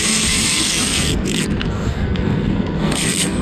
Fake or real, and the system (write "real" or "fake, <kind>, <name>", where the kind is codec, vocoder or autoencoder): fake, codec, SNAC